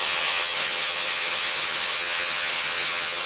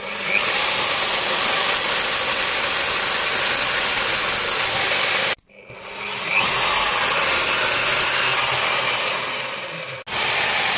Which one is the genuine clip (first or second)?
second